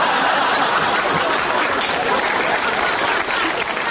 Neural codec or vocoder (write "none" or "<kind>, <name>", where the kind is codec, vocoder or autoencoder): none